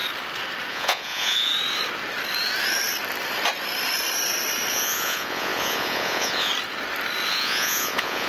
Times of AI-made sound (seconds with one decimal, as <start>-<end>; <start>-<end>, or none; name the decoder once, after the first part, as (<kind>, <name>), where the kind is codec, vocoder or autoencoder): 0.7-1.5 (vocoder, Vocos); 4.7-6.5; 7.3-8.3